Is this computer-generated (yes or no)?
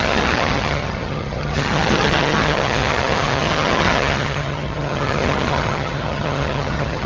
yes